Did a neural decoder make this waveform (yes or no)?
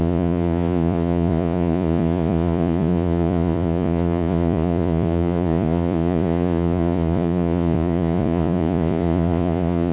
yes